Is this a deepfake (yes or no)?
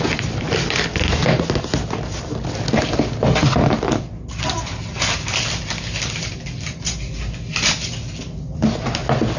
no